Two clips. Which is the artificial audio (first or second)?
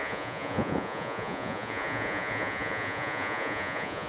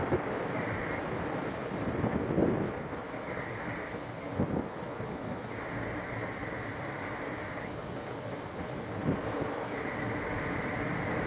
first